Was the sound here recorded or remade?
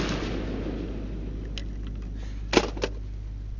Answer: recorded